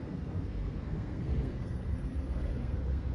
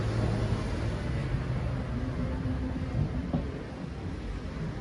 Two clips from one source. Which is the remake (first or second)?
first